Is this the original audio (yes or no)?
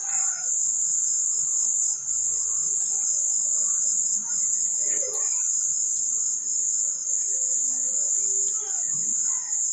yes